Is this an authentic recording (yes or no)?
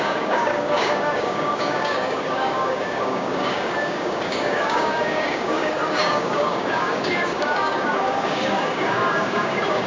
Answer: no